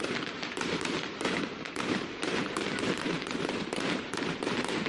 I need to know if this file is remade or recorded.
remade